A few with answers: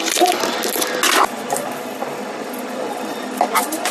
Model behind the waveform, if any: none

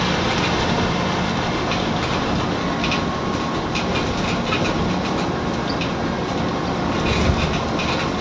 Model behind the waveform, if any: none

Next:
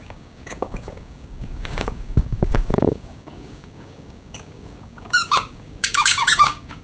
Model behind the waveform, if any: codec, DAC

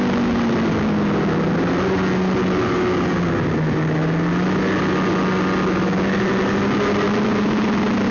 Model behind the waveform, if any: none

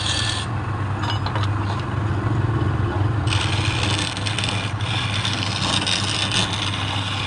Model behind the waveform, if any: none